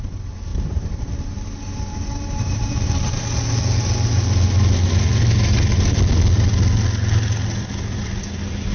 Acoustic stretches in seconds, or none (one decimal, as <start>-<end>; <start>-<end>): 0.0-0.5; 3.2-5.1; 6.0-8.7

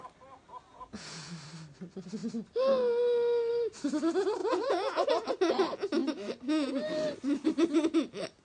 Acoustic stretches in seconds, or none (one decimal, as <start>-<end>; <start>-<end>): 0.0-0.7; 1.3-4.4; 5.3-8.4

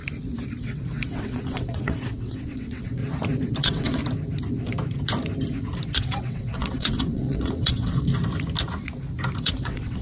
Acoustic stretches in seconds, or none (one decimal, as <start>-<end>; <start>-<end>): 0.0-0.6; 3.0-3.6; 4.0-6.0; 8.1-9.4

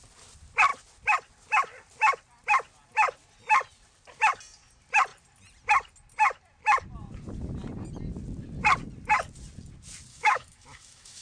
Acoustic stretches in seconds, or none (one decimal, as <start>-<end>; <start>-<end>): 0.0-10.1